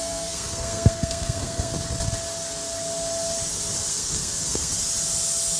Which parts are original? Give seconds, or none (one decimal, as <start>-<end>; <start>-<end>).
1.7-3.9; 4.7-5.6